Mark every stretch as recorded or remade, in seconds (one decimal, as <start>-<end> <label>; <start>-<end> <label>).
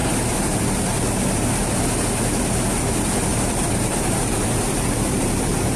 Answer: 0.0-1.8 remade; 1.8-3.3 recorded; 3.3-5.8 remade